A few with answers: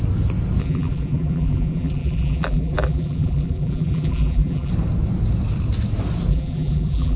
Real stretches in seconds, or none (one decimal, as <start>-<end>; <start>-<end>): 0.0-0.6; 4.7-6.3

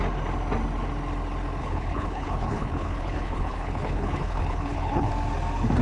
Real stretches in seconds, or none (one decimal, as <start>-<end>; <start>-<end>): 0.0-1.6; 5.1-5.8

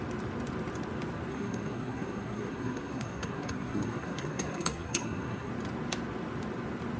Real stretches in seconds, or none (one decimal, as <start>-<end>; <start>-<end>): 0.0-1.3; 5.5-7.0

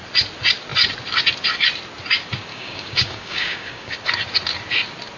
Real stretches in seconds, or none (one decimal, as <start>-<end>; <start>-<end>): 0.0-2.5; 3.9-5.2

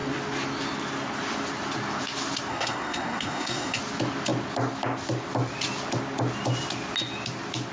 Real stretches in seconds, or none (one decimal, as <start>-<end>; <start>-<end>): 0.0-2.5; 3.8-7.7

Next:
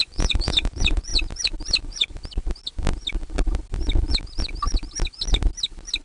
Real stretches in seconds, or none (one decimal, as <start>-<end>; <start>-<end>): 1.1-1.8; 2.2-6.0